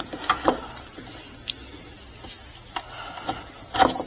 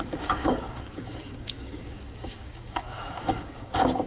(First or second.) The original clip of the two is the first